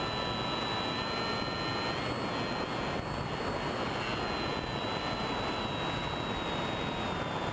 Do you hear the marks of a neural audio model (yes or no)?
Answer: no